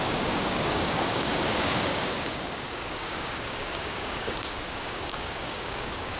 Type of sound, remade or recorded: remade